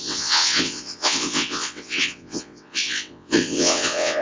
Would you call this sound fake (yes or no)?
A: yes